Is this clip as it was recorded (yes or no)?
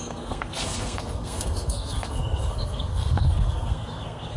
no